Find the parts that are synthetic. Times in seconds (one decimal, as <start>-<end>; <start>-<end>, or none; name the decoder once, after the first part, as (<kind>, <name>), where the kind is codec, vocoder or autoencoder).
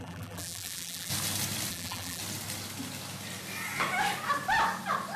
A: 0.0-1.1 (vocoder, BigVGAN v2); 1.7-2.2